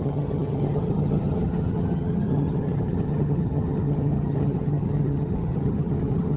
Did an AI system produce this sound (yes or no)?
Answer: yes